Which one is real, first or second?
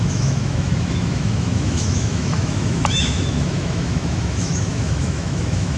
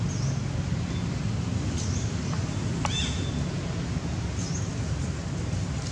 second